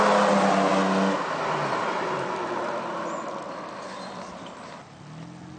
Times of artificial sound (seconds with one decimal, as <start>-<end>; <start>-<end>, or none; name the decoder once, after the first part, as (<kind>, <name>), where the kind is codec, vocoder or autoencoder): none